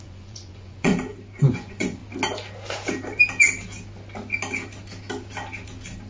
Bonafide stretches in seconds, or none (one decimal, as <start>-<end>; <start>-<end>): 0.9-1.4; 2.0-6.1